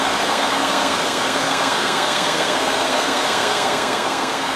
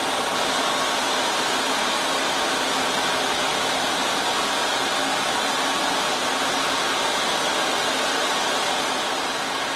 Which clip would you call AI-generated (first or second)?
first